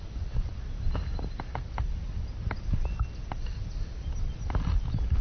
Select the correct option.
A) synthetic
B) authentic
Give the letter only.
B